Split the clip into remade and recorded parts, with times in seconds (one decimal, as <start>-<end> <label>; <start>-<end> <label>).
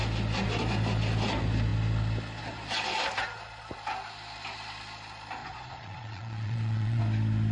0.0-5.4 recorded; 5.4-7.0 remade; 7.0-7.5 recorded